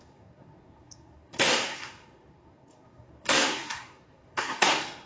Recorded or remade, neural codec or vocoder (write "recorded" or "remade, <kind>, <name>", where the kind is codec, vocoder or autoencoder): remade, codec, SNAC